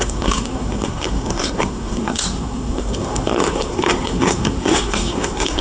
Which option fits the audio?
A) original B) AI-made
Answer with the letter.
B